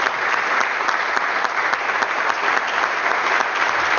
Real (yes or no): yes